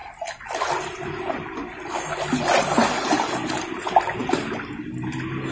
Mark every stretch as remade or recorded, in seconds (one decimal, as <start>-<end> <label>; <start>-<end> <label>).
0.0-5.5 recorded